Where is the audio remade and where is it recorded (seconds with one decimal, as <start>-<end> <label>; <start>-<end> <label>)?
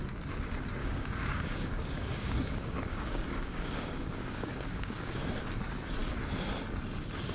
0.0-0.8 recorded; 0.8-5.2 remade; 5.2-7.3 recorded